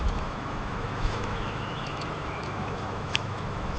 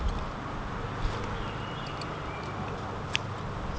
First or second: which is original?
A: second